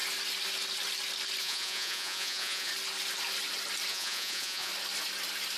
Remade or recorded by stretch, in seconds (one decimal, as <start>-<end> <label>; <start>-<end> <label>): 0.0-1.4 recorded; 1.4-2.7 remade; 2.7-3.9 recorded; 3.9-4.7 remade; 4.7-5.6 recorded